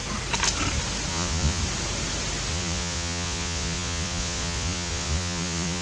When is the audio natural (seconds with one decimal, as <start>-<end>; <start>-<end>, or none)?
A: 0.0-1.1; 1.6-2.5